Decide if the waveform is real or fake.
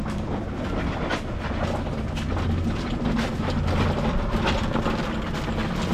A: real